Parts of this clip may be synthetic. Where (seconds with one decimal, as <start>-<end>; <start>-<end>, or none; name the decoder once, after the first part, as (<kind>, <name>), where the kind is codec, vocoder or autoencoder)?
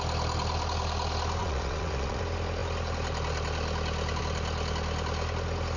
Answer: 1.4-2.2 (vocoder, Vocos)